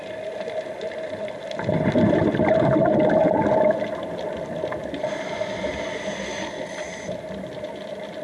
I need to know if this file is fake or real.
real